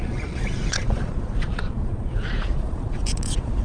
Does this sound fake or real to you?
fake